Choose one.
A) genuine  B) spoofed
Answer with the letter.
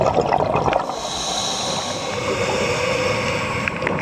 A